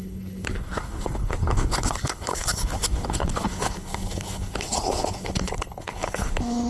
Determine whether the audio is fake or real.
fake